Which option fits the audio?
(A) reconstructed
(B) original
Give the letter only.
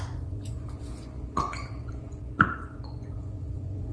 A